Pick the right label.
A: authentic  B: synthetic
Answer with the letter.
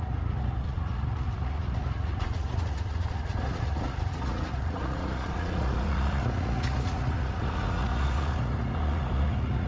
B